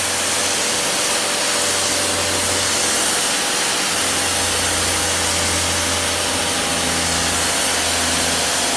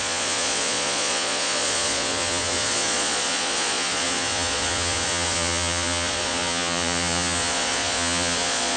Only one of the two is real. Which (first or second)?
first